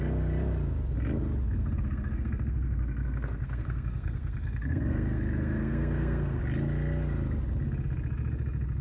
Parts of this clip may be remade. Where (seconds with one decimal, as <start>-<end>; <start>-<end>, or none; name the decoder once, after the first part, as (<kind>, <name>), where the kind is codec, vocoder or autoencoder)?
1.6-6.4 (codec, SNAC)